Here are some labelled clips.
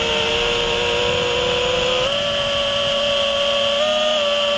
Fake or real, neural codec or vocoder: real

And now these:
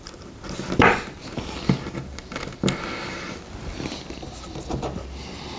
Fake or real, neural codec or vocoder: real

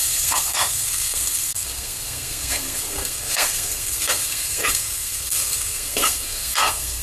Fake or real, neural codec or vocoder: fake, codec, SNAC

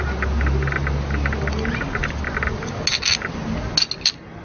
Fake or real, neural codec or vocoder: real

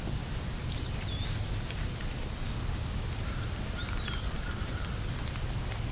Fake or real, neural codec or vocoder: real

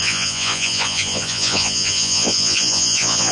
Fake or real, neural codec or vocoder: fake, vocoder, Vocos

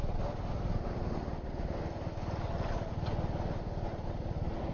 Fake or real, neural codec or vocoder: real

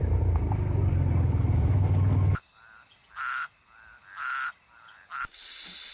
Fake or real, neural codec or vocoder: real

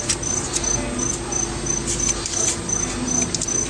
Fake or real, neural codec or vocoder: real